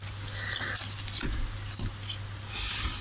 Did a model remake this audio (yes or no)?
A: no